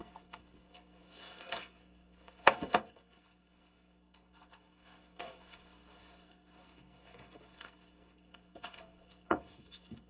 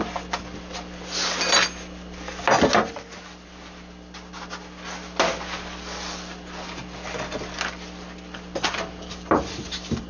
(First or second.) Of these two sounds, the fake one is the first